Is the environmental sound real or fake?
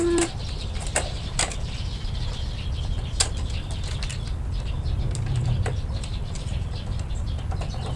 real